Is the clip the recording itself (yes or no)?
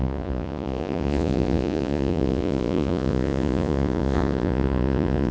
no